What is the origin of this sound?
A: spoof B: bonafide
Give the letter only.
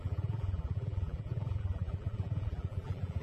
A